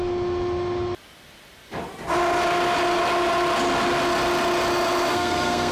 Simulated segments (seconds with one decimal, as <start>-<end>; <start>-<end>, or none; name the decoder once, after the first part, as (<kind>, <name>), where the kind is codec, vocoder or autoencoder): 5.1-5.7 (codec, SNAC)